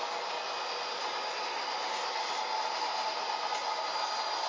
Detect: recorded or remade recorded